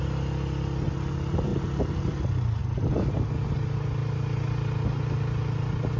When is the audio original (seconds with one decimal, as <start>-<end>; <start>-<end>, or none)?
0.0-6.0

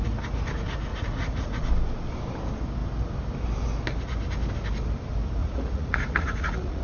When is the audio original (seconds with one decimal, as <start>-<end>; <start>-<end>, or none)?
0.0-0.9; 1.7-5.4

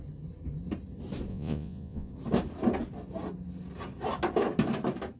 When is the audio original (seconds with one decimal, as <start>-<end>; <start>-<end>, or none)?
0.0-1.3; 2.1-5.2

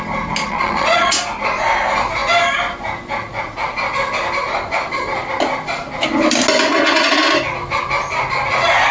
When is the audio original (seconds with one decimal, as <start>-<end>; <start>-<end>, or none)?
0.0-0.4; 1.2-8.9

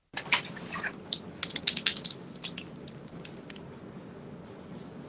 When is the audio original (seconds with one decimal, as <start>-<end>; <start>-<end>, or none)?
0.0-5.1

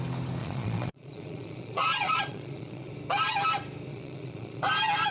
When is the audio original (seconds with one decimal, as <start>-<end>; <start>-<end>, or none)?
0.0-0.4; 2.9-3.9; 4.6-5.1

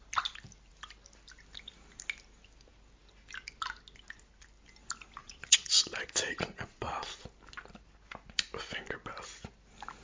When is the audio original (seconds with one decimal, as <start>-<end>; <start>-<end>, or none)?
0.0-5.2; 7.2-10.0